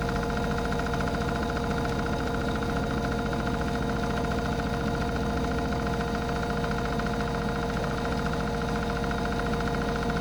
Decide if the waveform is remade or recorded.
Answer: recorded